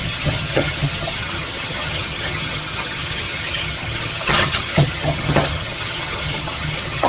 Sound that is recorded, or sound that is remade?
remade